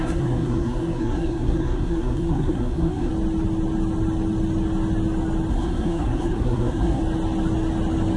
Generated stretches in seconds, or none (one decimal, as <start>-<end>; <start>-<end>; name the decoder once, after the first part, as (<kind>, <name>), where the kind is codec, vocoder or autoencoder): 0.0-3.1 (codec, SNAC); 5.5-7.0